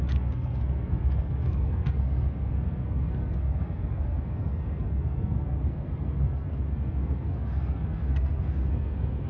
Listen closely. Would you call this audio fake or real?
fake